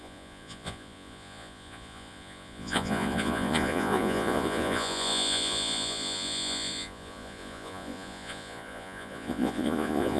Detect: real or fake fake